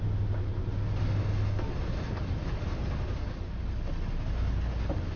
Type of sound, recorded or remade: recorded